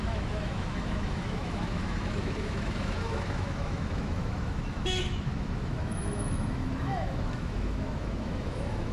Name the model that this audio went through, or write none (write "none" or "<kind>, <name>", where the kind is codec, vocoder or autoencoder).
autoencoder, DAC-VAE